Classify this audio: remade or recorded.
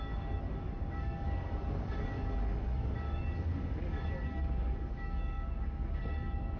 remade